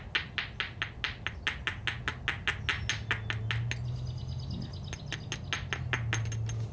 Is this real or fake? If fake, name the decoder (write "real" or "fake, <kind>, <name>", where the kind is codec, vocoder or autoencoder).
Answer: real